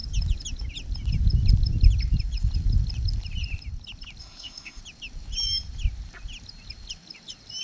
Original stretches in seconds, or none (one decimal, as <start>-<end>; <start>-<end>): 0.0-4.2; 4.8-7.6